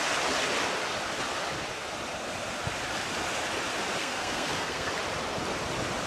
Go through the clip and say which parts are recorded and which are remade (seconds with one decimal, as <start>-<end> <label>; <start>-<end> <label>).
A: 0.0-4.0 recorded; 4.0-4.9 remade; 4.9-6.1 recorded